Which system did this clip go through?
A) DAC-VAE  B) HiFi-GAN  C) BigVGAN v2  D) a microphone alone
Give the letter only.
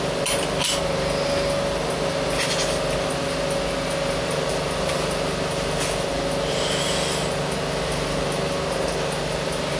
D